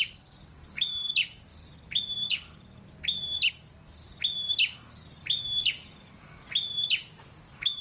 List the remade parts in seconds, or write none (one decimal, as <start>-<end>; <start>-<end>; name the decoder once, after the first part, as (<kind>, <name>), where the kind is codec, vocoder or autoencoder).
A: none

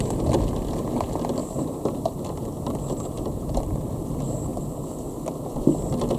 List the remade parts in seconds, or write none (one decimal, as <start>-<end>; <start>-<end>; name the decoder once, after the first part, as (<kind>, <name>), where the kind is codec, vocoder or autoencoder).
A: 1.4-3.9 (vocoder, BigVGAN v2)

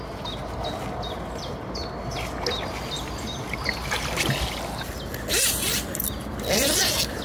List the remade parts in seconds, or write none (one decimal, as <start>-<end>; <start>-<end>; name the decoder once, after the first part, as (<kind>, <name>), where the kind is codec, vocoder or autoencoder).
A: none

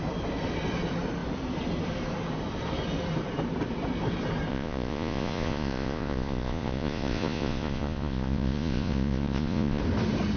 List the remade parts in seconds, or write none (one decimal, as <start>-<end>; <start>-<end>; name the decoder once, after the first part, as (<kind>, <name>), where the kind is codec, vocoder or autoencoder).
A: 4.5-9.8 (vocoder, Vocos)

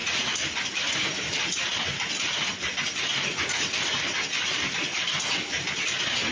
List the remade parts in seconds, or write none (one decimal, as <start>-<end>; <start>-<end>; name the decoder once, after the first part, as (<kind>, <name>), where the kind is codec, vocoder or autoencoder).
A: none